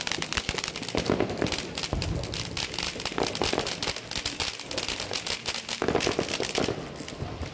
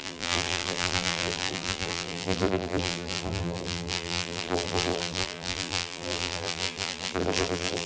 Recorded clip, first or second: first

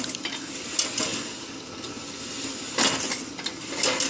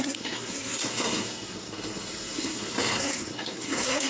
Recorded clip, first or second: first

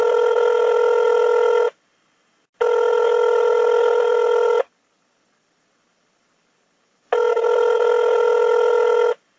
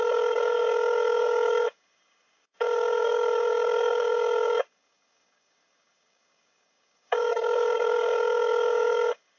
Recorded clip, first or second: first